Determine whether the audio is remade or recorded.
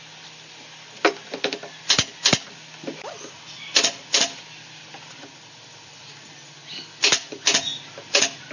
recorded